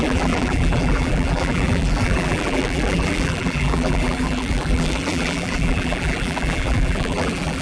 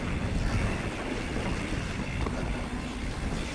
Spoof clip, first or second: first